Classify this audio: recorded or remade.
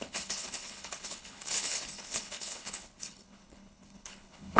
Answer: remade